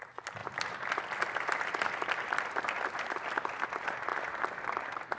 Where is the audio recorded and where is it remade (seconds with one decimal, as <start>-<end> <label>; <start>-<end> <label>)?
0.0-5.2 recorded